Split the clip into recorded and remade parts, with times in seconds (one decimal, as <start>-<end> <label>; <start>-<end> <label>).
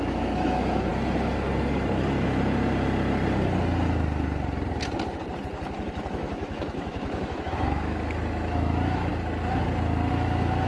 0.0-0.9 remade; 0.9-6.1 recorded; 6.1-9.1 remade; 9.1-10.1 recorded; 10.1-10.7 remade